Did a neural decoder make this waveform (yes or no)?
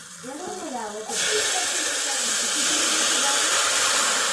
no